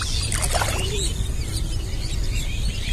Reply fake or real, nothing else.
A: real